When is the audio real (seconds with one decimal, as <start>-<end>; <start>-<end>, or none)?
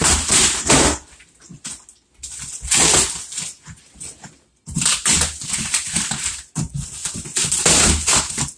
0.0-8.6